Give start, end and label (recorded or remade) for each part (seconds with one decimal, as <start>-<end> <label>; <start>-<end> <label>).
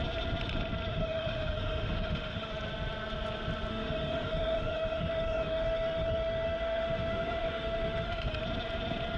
0.0-0.9 recorded; 0.9-2.5 remade; 2.5-3.7 recorded; 3.7-8.4 remade; 8.4-9.2 recorded